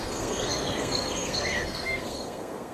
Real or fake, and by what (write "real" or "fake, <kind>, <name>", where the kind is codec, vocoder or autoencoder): fake, codec, SNAC